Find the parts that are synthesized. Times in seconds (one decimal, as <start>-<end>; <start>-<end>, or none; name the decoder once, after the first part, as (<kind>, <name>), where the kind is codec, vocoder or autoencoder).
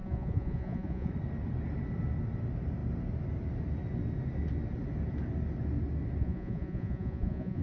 0.0-1.1 (vocoder, Vocos); 6.2-7.6